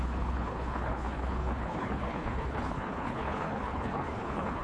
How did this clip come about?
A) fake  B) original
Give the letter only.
A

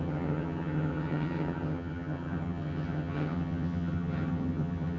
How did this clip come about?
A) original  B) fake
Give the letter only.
B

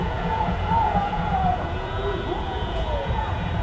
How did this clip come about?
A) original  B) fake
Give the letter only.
B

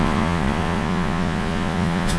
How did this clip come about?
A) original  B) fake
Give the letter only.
B